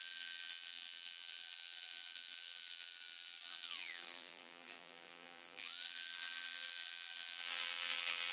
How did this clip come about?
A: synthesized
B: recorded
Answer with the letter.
A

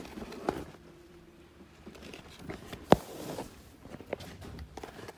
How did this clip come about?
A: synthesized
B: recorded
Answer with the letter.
A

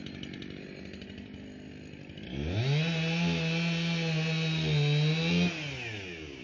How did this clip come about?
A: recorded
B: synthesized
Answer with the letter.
A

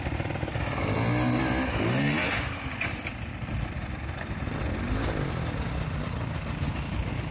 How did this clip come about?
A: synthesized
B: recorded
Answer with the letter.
B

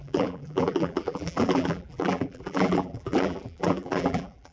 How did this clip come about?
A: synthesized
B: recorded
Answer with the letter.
A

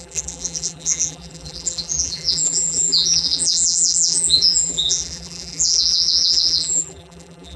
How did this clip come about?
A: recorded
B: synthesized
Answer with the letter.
B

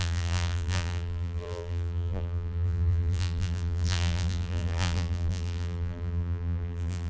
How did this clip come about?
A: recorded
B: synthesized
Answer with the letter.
B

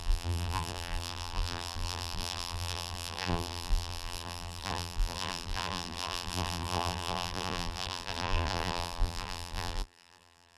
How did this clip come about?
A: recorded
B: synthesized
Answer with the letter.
B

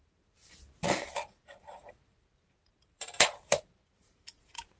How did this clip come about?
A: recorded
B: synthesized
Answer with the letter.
B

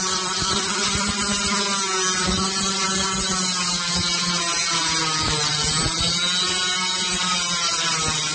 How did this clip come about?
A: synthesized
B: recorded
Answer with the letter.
B